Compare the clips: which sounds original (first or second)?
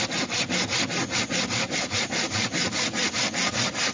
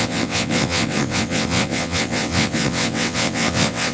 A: first